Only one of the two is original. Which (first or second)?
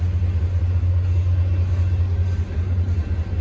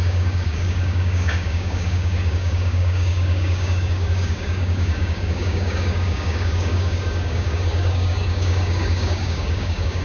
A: first